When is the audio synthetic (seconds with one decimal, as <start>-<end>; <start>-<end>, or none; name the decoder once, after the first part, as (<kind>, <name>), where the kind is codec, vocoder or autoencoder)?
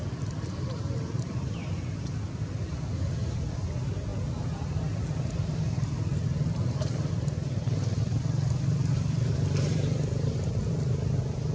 0.0-4.1 (vocoder, BigVGAN v2); 7.1-11.5